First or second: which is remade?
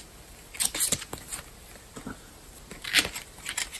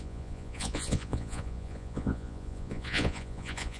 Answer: second